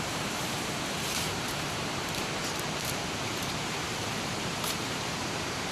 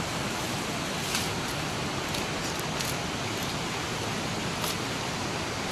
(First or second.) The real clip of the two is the second